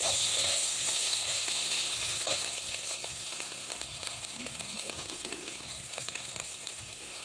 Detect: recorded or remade remade